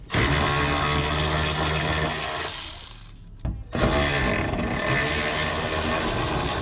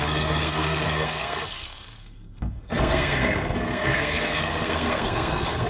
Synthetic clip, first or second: second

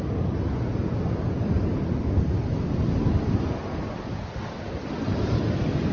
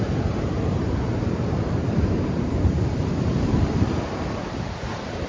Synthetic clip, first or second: second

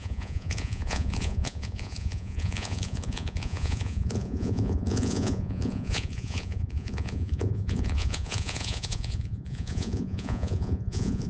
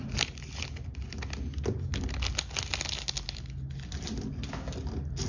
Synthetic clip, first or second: first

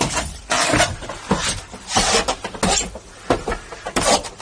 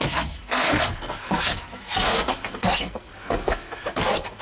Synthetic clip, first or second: second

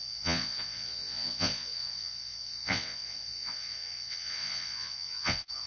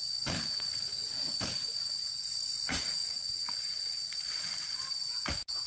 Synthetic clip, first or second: first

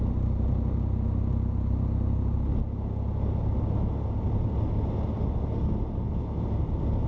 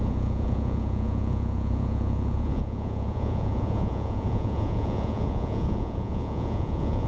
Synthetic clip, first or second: second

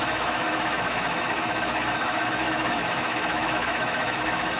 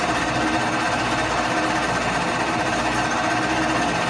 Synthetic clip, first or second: first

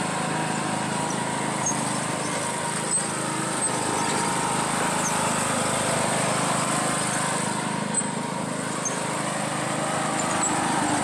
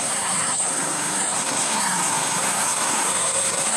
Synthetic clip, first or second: second